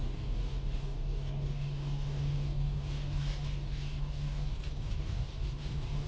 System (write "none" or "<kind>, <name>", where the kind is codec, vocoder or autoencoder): codec, DAC